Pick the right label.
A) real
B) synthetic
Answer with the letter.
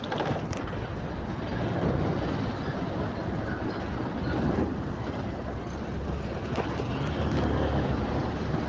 A